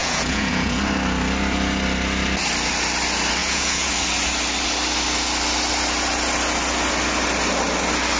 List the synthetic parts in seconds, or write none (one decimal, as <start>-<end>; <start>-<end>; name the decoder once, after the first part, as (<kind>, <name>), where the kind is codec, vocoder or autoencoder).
0.0-0.8 (vocoder, Vocos); 3.4-3.9